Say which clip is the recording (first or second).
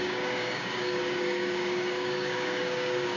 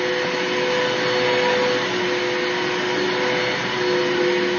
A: second